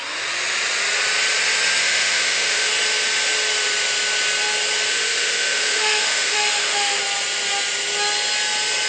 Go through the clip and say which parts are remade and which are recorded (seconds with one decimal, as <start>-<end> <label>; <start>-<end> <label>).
0.0-1.8 recorded; 1.8-2.7 remade; 2.7-4.9 recorded; 4.9-7.0 remade; 7.0-8.9 recorded